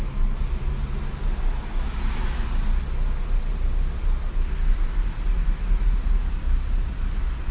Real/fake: real